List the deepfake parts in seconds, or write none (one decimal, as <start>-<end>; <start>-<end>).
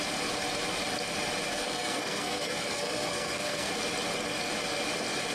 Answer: 1.5-3.7